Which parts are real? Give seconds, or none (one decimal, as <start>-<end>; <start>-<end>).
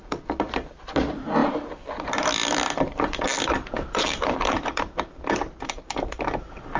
0.9-1.4; 5.5-6.8